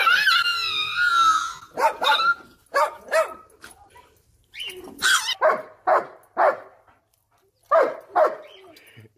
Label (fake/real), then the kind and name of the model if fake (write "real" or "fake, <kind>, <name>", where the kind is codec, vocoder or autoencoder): real